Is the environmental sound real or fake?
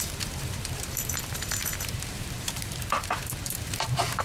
fake